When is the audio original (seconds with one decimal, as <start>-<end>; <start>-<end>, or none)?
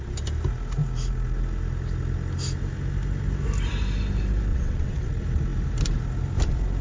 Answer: 0.0-4.5; 5.1-6.8